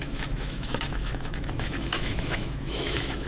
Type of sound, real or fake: fake